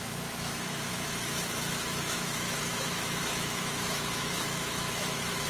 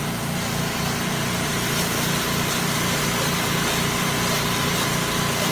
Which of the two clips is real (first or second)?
second